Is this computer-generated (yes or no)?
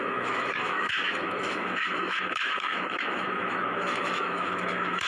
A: yes